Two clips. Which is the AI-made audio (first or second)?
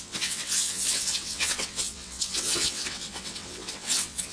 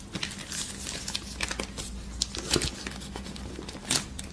first